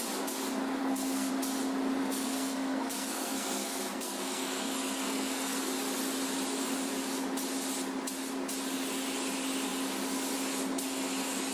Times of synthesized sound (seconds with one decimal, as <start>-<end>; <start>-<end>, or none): 0.8-1.3; 2.0-5.7